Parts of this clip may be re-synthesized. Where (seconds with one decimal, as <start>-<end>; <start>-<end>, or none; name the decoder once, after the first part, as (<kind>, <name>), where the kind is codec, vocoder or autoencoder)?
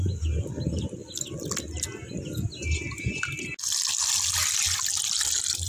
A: none